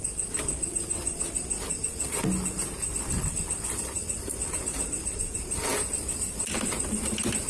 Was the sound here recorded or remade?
recorded